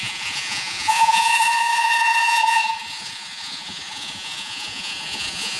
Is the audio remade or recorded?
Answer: remade